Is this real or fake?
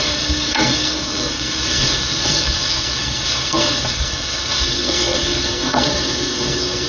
fake